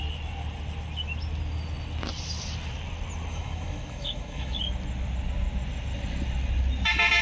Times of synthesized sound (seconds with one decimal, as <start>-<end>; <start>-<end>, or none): 3.3-4.6

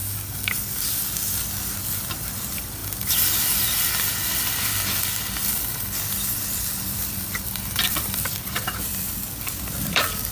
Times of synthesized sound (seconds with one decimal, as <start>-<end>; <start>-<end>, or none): 2.3-2.8; 5.0-10.3

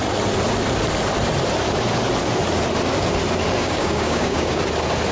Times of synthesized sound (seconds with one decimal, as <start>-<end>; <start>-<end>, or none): 3.6-4.6

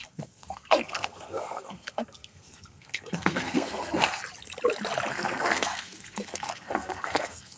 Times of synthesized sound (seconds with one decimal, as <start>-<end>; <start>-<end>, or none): 0.0-4.2; 5.1-7.6

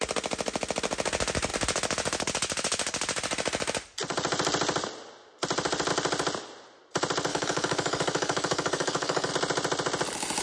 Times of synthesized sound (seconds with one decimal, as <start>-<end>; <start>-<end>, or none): 7.3-9.3

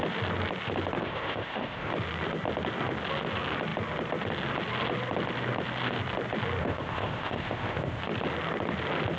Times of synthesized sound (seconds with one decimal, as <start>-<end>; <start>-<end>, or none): 1.0-1.9; 6.6-8.0

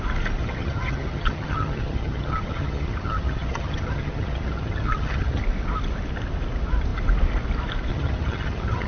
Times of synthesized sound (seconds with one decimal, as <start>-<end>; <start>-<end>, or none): 0.4-5.4; 7.9-8.9